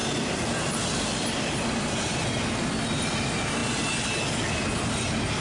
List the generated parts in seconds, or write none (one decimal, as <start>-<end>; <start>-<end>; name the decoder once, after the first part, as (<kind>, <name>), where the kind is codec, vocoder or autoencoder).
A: 0.0-1.9 (vocoder, BigVGAN v2)

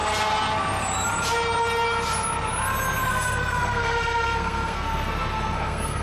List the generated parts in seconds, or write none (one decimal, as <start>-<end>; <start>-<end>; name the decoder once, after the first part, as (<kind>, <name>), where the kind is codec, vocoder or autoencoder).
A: 3.1-6.0 (codec, SNAC)

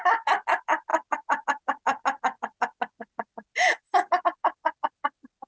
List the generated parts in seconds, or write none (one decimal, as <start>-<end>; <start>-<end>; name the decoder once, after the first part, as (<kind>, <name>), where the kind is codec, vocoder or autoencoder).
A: none

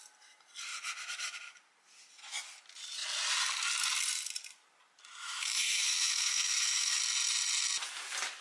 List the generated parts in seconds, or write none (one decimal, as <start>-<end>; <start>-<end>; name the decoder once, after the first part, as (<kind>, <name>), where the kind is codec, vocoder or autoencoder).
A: 5.2-7.0 (autoencoder, DAC-VAE)